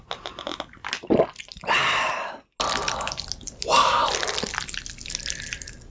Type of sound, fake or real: real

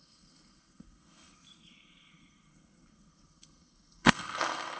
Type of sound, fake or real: fake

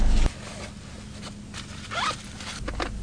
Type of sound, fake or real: real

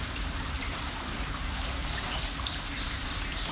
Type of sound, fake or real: fake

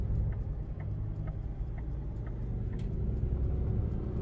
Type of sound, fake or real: real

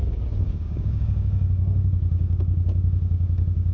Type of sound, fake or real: fake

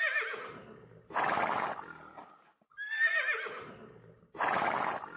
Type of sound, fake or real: real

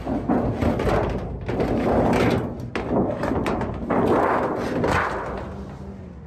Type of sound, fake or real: real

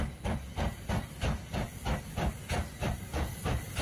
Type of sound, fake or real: real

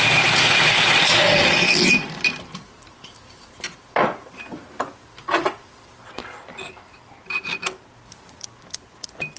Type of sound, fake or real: real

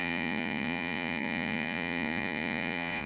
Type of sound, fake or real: fake